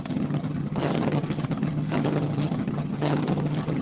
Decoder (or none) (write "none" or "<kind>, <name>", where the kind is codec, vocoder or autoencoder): vocoder, HiFi-GAN